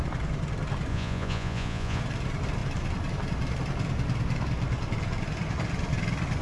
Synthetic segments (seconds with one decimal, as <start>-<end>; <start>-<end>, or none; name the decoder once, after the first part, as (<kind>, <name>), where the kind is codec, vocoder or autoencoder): 0.9-2.0 (vocoder, Vocos)